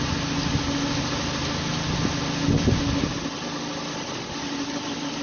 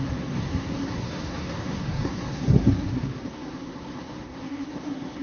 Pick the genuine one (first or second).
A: first